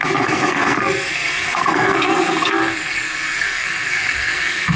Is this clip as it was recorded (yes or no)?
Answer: no